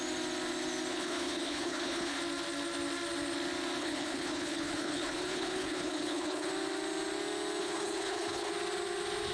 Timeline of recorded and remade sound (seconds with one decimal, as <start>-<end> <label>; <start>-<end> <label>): 0.0-0.9 recorded; 0.9-2.2 remade; 2.2-3.8 recorded; 3.8-6.5 remade; 6.5-7.6 recorded; 7.6-8.5 remade; 8.5-9.3 recorded